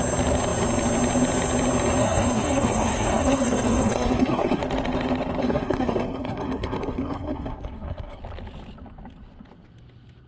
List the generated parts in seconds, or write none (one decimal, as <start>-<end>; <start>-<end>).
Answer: 2.0-4.6; 5.4-8.2